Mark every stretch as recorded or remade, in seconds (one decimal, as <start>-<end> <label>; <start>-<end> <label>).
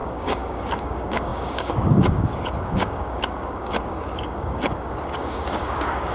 0.0-6.1 remade